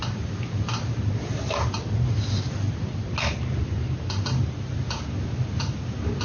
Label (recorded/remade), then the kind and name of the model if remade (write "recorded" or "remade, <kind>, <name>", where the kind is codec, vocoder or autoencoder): recorded